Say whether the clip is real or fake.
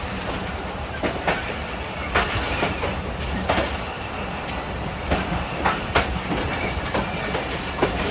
fake